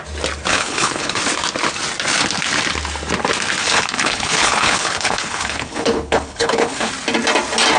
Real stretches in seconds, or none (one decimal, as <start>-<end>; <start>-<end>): 0.0-0.5; 1.2-3.6; 6.9-7.8